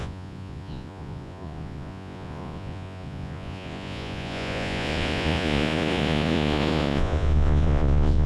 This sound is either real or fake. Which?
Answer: fake